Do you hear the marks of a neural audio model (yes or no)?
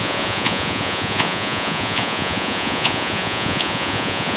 yes